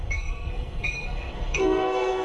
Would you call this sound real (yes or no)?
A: no